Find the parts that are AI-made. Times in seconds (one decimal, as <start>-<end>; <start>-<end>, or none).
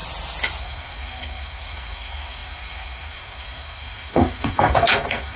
0.6-5.4